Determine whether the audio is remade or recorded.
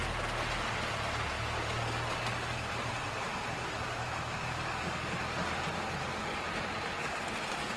recorded